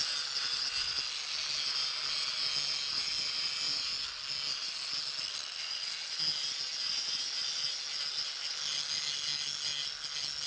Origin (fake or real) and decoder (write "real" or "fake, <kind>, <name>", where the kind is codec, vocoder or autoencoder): real